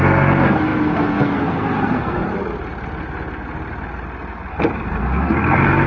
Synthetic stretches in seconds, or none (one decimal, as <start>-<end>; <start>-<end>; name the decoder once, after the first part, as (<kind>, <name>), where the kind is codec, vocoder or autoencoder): 0.0-2.3 (codec, SNAC); 4.5-5.9